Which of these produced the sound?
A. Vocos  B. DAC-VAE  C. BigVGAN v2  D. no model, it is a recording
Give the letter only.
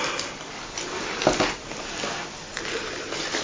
C